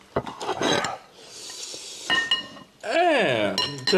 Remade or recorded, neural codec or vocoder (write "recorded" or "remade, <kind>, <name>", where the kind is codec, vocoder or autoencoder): recorded